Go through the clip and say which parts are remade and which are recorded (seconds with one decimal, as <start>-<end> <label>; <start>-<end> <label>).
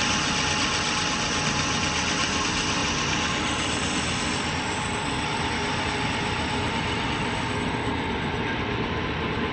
0.0-9.5 recorded